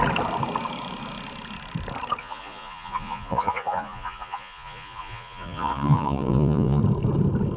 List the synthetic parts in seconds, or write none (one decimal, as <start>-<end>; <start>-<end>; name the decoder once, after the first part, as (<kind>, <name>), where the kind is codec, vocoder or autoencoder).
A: 2.2-6.8 (vocoder, Vocos)